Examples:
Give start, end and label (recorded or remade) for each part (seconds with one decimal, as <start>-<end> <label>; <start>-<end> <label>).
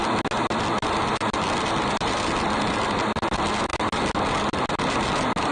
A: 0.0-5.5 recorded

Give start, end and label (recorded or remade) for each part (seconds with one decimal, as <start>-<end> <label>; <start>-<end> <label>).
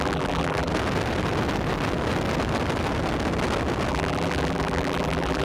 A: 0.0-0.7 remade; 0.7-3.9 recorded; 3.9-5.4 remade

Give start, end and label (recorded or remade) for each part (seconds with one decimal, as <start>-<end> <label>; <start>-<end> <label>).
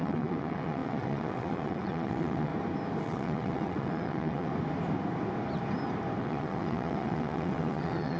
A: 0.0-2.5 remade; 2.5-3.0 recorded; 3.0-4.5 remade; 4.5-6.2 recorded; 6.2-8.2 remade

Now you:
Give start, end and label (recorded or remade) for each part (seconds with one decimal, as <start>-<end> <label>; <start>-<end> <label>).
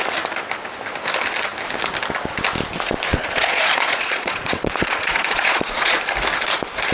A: 0.0-3.1 recorded; 3.1-6.0 remade; 6.0-6.9 recorded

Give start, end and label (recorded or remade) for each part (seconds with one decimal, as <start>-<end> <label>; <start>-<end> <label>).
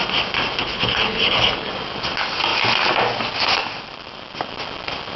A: 0.0-0.6 recorded; 0.6-1.7 remade; 1.7-5.2 recorded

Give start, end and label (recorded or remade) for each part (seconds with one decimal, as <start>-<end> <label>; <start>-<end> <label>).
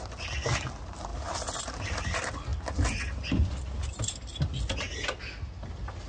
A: 0.0-6.1 recorded